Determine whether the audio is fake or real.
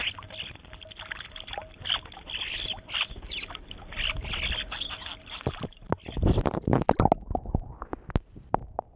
real